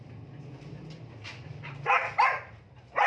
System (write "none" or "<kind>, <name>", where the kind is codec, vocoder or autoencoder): none